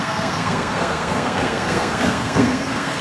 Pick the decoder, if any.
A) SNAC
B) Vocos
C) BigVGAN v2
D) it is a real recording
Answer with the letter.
A